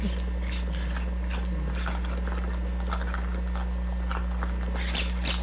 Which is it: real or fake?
real